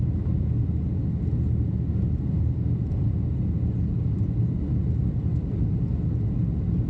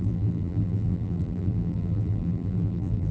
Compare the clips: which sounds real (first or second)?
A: first